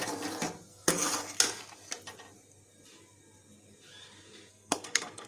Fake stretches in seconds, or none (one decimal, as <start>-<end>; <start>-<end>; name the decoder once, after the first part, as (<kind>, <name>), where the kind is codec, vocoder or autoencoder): 0.7-1.4 (codec, SNAC); 4.5-5.3